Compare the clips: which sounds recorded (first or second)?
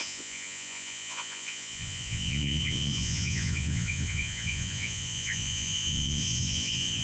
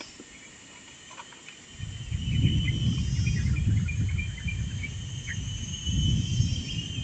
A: second